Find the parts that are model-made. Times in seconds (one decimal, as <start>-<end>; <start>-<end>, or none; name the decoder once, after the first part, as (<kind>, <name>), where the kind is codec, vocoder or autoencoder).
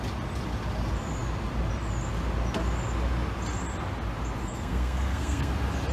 4.4-5.5 (codec, SNAC)